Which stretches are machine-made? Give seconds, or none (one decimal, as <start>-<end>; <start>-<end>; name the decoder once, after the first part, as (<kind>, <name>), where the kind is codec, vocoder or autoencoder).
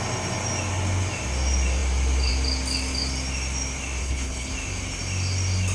4.0-4.5 (codec, HILCodec)